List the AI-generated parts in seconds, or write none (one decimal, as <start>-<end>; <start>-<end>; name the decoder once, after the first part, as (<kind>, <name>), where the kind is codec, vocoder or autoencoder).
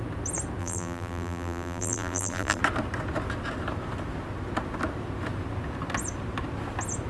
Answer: 0.6-2.6 (vocoder, BigVGAN v2)